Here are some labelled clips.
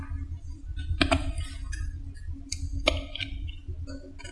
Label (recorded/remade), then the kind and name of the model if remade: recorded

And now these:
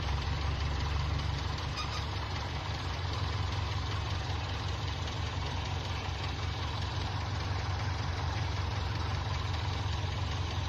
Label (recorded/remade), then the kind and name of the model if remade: remade, vocoder, BigVGAN v2